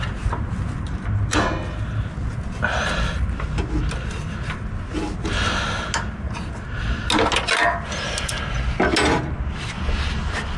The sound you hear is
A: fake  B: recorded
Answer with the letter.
B